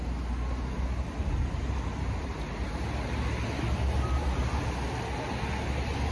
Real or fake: real